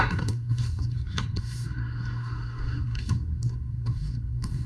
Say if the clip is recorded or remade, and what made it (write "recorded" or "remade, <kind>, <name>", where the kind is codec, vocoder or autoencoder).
remade, codec, SNAC